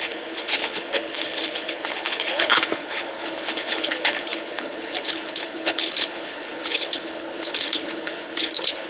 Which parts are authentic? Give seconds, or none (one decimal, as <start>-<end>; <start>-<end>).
none